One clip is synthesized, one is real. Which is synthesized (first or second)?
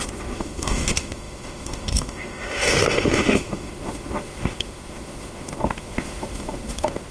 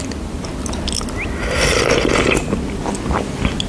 first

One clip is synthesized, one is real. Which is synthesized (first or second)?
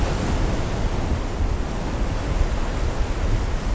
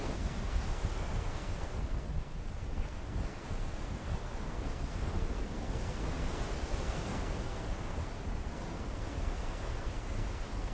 second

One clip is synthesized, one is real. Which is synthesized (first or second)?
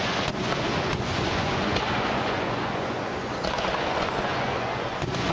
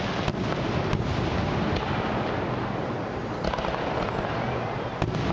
first